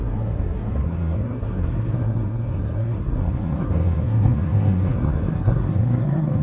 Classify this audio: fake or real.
fake